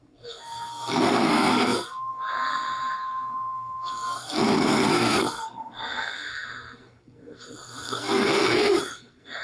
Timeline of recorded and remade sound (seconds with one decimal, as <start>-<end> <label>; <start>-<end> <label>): 0.0-9.4 remade